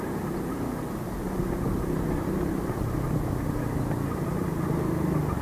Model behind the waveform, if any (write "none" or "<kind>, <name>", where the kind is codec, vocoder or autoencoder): none